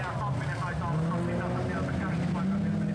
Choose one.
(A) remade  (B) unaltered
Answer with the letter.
B